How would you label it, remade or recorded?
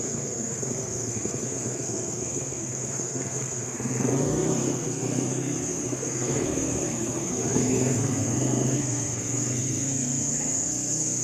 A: remade